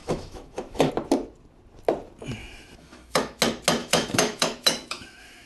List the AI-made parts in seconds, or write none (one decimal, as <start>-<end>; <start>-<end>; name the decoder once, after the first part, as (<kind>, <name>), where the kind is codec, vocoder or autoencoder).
0.0-0.9 (autoencoder, DAC-VAE); 2.4-3.4; 3.8-5.5